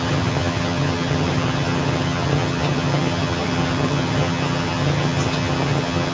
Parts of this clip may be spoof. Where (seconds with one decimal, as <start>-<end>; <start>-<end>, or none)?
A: 0.0-6.1